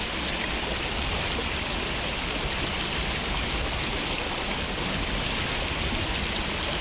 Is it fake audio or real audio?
real